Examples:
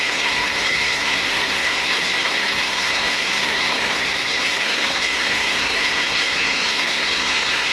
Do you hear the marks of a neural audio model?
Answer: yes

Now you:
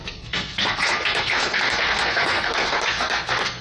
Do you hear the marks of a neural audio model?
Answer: yes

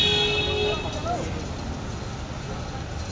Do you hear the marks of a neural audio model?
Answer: no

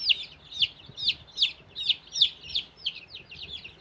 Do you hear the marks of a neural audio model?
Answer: no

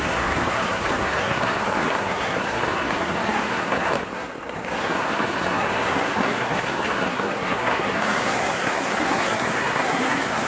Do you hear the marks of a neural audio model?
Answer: yes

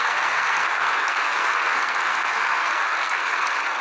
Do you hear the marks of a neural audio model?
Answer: yes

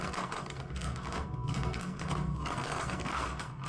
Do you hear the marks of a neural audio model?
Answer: yes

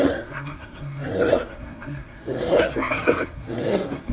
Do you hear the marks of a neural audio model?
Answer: yes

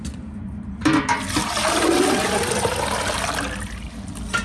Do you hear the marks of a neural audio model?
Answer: no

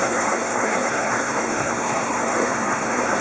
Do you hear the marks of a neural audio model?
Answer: yes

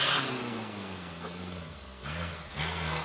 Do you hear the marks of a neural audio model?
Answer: yes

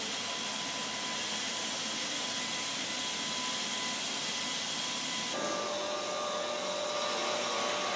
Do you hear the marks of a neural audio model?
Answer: no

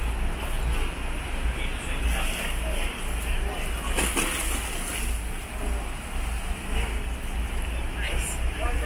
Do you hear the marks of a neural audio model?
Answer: no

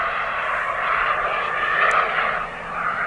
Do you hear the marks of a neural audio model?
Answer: no